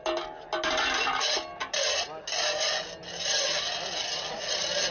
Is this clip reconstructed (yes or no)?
no